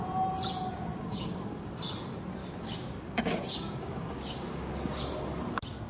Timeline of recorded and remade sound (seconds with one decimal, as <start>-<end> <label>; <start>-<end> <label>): 0.0-0.9 recorded; 0.9-1.7 remade; 1.7-2.4 recorded; 2.4-5.0 remade; 5.0-5.9 recorded